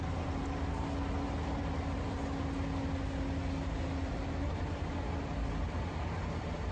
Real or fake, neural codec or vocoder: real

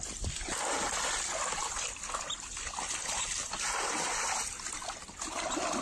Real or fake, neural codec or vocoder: real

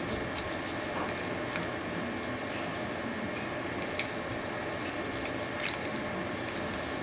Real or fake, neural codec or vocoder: real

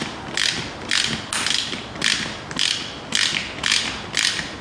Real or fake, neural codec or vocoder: real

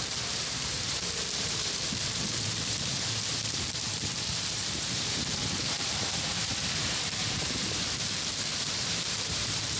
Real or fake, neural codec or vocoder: fake, vocoder, BigVGAN v2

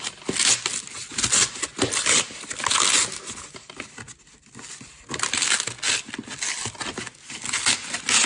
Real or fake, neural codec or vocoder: real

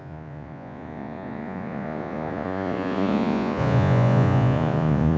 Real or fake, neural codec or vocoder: fake, vocoder, Vocos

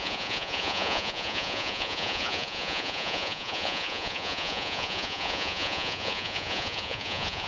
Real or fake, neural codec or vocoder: fake, vocoder, Vocos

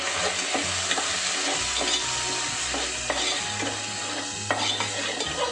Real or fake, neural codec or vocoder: real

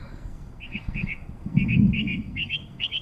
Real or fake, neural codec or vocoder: fake, codec, SNAC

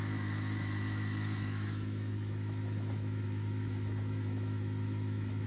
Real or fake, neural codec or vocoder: fake, autoencoder, DAC-VAE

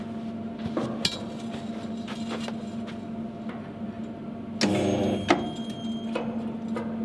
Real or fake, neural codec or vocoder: real